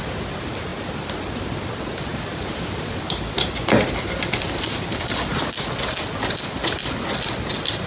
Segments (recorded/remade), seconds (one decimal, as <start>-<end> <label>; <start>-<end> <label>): 0.0-7.9 recorded